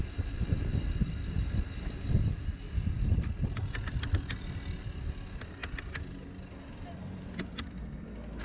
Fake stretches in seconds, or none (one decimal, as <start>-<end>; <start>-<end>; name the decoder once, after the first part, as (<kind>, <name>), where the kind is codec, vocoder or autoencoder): none

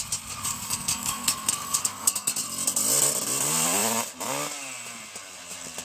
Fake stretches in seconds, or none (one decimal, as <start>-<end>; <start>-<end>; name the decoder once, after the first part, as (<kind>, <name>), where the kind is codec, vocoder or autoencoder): 0.5-2.3 (codec, SNAC)

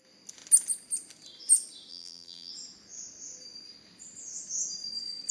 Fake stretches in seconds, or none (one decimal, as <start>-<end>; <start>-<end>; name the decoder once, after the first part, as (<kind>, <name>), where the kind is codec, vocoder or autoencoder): 1.9-2.5 (vocoder, BigVGAN v2)